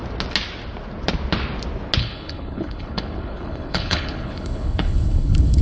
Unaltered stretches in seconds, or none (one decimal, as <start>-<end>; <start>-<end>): 0.0-2.0